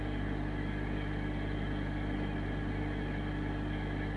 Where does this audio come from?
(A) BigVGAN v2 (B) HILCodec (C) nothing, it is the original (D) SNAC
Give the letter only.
C